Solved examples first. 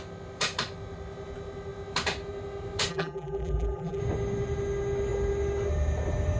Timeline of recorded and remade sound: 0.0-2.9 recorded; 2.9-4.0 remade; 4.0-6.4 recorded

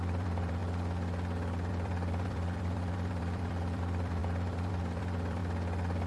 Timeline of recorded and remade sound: 0.0-0.6 remade; 0.6-1.7 recorded; 1.7-5.4 remade; 5.4-6.1 recorded